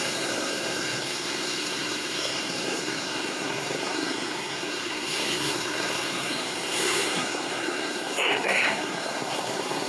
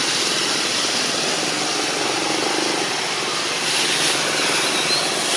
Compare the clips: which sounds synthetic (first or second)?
first